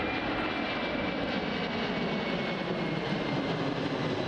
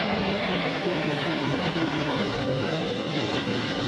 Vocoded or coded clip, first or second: second